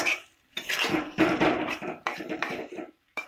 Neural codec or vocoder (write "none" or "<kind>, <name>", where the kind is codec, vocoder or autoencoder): vocoder, BigVGAN v2